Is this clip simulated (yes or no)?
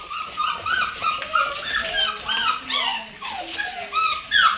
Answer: no